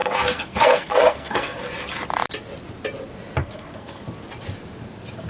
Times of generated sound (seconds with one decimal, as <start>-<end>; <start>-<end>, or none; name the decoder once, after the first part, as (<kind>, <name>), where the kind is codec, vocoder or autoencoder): 0.0-1.6 (codec, SNAC); 3.4-4.0